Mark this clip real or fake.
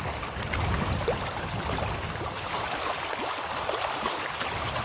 real